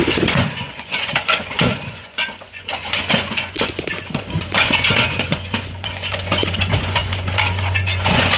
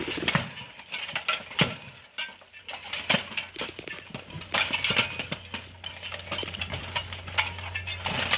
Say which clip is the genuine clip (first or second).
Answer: second